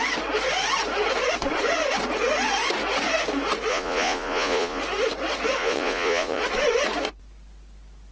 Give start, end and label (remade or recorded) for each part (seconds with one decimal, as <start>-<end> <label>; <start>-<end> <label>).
0.0-3.7 recorded; 3.7-4.8 remade; 4.8-5.6 recorded; 5.6-6.4 remade; 6.4-8.1 recorded